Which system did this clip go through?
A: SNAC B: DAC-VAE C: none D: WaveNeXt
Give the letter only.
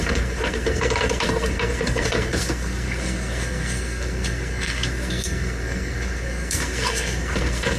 A